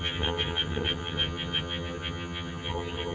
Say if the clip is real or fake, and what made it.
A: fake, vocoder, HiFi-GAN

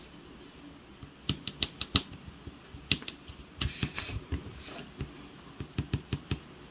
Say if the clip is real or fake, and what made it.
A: real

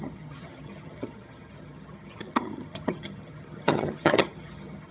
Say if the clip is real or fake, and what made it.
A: fake, vocoder, HiFi-GAN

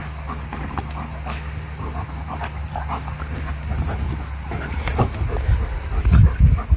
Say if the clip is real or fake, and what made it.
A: real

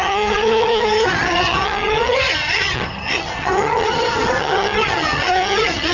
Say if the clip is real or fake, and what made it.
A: fake, vocoder, HiFi-GAN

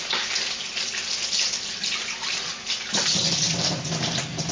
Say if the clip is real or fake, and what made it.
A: real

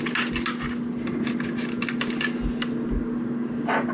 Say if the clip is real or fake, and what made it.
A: real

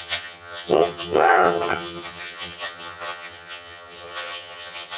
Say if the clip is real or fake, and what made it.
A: fake, vocoder, HiFi-GAN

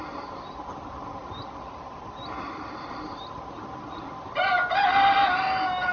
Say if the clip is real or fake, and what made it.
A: real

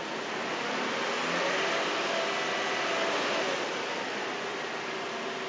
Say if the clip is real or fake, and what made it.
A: real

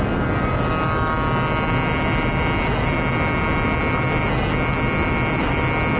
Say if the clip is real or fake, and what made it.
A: real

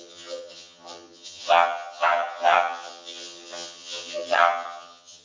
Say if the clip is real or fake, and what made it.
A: fake, vocoder, HiFi-GAN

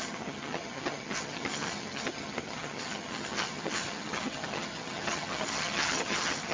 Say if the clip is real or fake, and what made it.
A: fake, vocoder, HiFi-GAN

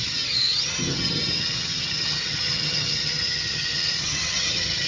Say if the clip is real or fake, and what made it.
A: fake, vocoder, HiFi-GAN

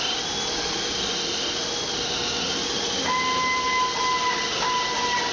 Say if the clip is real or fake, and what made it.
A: real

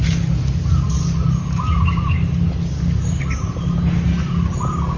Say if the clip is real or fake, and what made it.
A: real